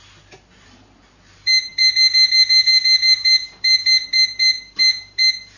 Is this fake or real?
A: fake